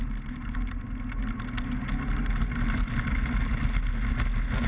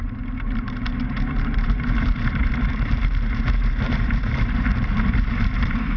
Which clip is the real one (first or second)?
first